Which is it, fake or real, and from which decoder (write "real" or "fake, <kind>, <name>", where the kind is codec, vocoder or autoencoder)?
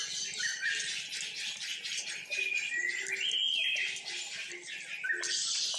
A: real